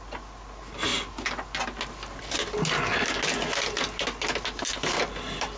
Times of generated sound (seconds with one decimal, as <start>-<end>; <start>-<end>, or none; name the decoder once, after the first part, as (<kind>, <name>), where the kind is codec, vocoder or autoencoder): none